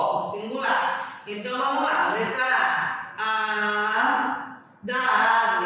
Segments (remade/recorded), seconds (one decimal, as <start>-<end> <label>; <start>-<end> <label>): 0.0-5.7 recorded